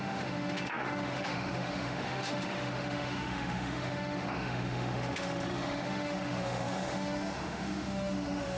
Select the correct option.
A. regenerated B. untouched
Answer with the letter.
A